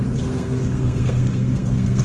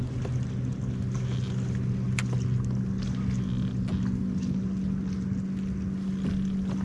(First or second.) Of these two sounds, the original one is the second